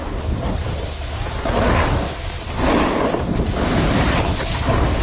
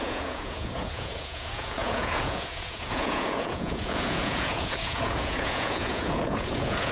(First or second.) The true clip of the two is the first